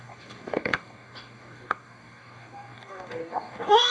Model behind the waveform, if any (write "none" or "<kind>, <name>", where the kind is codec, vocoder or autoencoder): codec, DAC